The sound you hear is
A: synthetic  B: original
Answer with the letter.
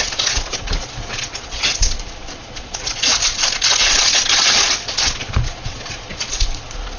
A